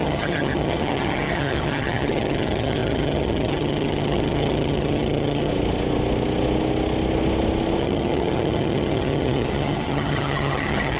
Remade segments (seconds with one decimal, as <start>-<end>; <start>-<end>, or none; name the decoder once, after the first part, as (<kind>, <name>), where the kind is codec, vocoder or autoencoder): 0.0-5.5 (vocoder, HiFi-GAN); 7.8-11.0